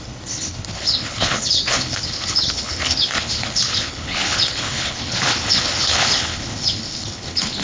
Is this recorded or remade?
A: remade